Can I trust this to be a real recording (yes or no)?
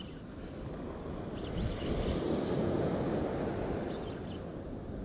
yes